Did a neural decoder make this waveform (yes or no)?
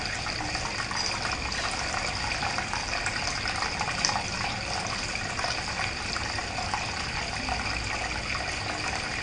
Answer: no